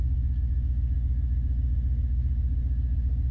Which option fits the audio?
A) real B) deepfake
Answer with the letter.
A